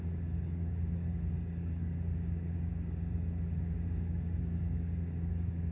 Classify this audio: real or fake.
fake